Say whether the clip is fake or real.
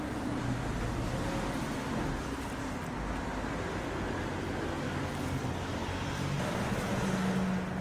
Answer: real